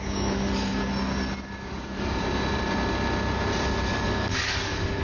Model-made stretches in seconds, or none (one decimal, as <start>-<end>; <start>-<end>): 0.0-0.9; 3.9-5.0

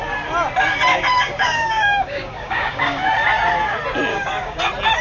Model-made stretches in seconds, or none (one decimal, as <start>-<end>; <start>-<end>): 0.9-3.1; 4.1-4.6